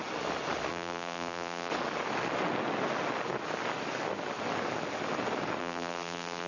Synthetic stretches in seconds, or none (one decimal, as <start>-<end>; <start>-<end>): 0.7-1.7; 5.6-6.5

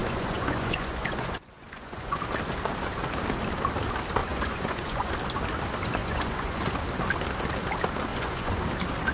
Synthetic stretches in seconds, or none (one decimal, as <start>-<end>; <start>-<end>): 0.0-2.2; 4.2-5.1; 6.0-6.6; 8.1-8.6